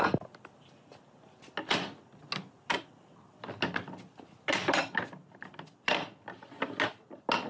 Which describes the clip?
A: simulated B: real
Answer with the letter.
B